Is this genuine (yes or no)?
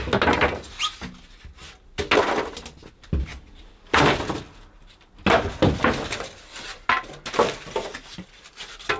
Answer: yes